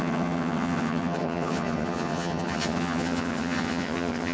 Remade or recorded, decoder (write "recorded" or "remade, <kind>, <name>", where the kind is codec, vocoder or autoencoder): remade, vocoder, HiFi-GAN